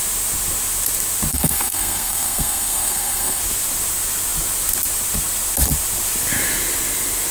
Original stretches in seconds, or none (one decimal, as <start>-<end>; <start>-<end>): 0.0-1.3; 3.4-7.3